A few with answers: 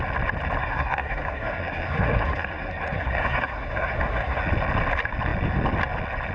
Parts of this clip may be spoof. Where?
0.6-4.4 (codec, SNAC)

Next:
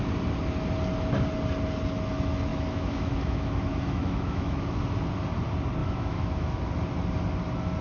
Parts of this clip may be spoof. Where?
2.5-4.8 (autoencoder, DAC-VAE); 5.8-6.6

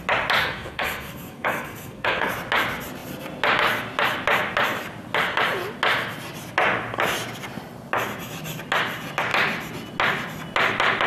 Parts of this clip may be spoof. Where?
0.4-2.3 (codec, SNAC)